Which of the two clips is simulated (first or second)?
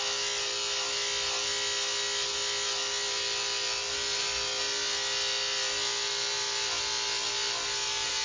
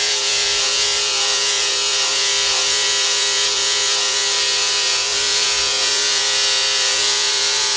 second